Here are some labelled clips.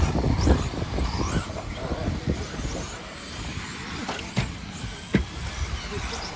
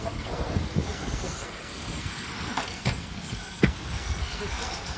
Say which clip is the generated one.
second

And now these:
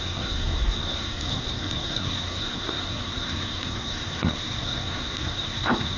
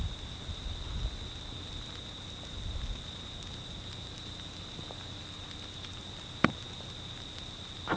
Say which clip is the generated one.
first